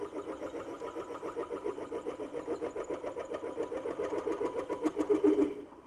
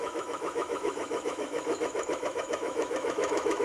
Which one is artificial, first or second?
second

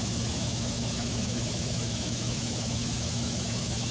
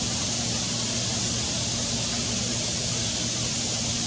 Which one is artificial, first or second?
first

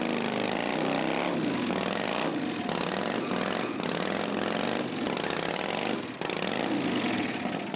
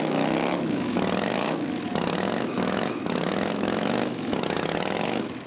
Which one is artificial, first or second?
second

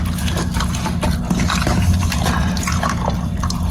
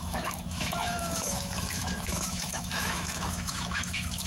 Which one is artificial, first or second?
second